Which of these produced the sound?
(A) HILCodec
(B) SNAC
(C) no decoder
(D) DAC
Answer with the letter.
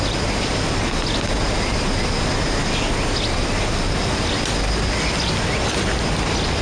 C